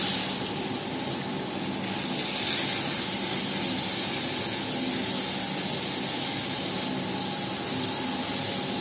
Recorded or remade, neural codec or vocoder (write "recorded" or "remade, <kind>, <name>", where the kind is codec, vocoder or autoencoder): recorded